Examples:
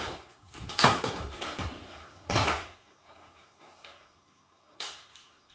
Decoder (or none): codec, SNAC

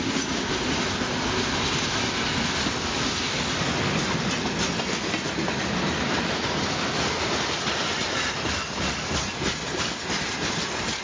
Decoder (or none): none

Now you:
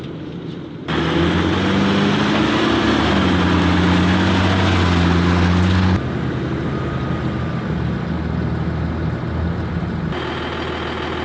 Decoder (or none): none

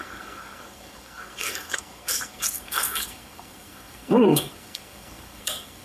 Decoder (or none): codec, SNAC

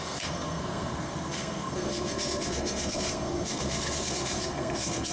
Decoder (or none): codec, SNAC